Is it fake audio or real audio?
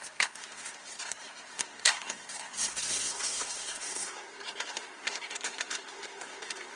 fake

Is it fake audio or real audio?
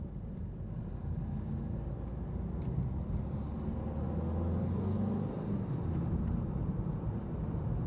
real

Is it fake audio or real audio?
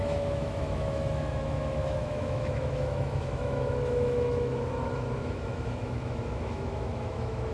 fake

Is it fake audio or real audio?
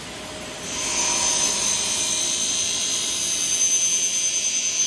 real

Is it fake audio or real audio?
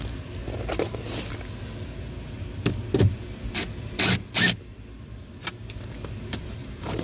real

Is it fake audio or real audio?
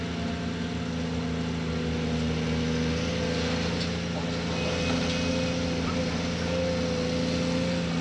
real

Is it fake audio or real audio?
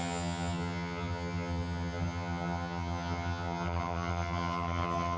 fake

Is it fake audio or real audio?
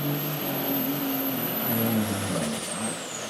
real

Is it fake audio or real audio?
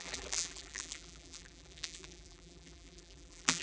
fake